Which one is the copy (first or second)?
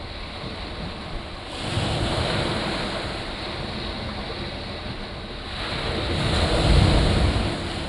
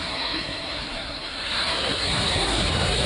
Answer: second